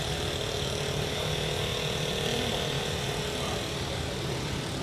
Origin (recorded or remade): recorded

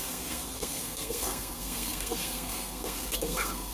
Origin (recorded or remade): remade